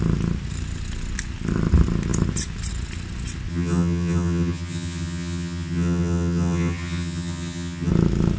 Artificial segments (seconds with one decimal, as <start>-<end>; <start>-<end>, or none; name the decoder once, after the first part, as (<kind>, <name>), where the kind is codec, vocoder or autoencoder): 3.5-7.9 (vocoder, HiFi-GAN)